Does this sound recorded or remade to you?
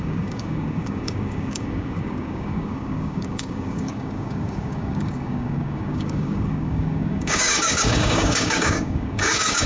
remade